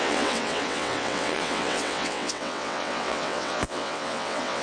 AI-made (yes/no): yes